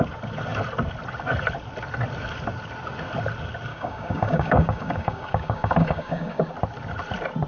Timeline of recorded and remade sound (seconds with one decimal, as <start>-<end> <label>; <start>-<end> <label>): 0.0-3.7 recorded; 3.7-6.5 remade; 6.5-7.5 recorded